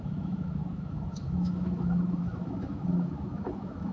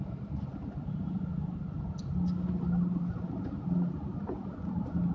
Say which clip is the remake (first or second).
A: first